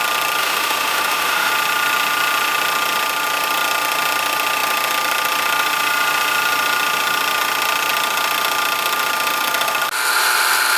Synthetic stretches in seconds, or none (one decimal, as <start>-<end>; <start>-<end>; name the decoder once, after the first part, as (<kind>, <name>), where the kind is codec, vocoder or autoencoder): 0.4-1.5 (autoencoder, DAC-VAE)